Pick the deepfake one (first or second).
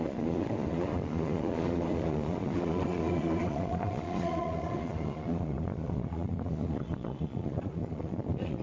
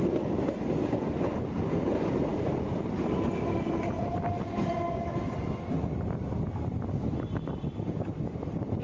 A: first